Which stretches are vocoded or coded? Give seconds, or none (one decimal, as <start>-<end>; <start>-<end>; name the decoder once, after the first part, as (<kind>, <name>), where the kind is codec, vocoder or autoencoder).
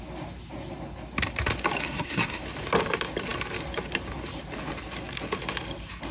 1.8-2.4 (codec, SNAC)